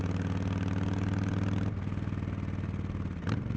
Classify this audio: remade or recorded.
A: recorded